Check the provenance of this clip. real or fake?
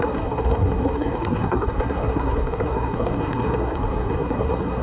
fake